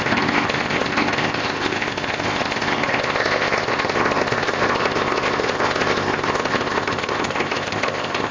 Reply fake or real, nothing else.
fake